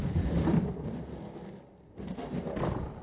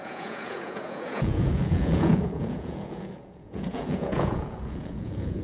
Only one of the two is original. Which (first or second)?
first